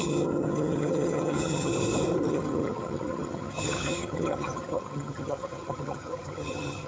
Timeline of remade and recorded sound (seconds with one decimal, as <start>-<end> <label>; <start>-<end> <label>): 0.0-1.7 remade; 1.7-2.3 recorded; 2.3-6.9 remade